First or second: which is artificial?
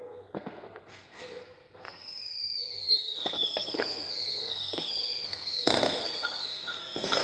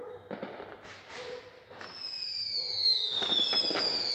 first